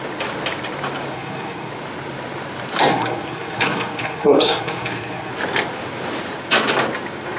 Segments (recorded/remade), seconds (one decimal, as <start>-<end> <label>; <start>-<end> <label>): 0.0-1.1 recorded; 1.1-1.7 remade; 1.7-2.9 recorded; 2.9-5.3 remade; 5.3-7.4 recorded